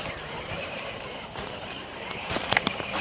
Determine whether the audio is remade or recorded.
remade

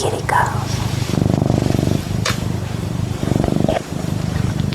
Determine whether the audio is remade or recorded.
remade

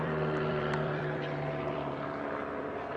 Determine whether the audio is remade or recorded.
remade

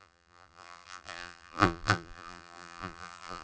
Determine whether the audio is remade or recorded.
remade